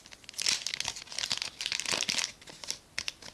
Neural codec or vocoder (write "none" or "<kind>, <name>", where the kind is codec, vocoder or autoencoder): none